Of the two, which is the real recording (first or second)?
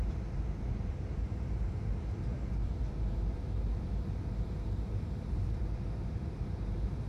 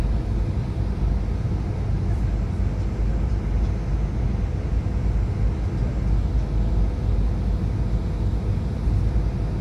second